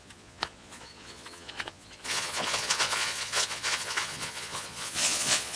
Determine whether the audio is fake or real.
fake